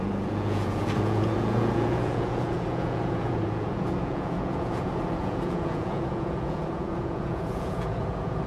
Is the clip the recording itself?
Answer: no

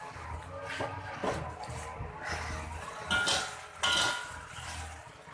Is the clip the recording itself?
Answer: yes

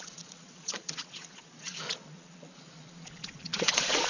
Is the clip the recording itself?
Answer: no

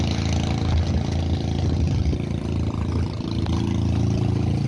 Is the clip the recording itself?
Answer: yes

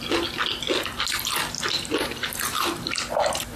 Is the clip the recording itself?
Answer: yes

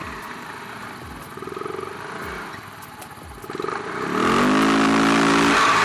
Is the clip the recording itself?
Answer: yes